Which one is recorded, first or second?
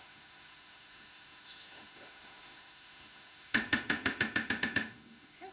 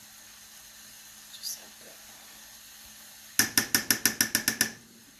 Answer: second